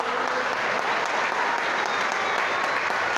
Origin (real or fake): real